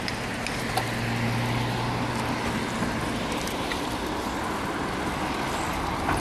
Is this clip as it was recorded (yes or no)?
yes